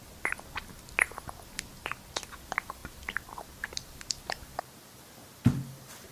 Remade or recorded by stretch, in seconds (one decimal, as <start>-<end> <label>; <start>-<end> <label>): 0.0-6.1 recorded